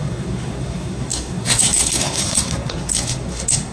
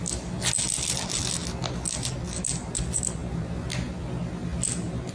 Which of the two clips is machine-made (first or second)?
first